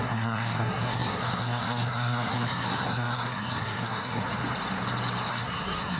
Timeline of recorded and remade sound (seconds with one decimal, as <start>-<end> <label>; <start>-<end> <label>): 0.0-4.2 remade; 4.2-5.3 recorded; 5.3-6.0 remade